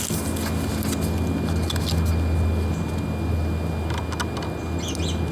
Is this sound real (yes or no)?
yes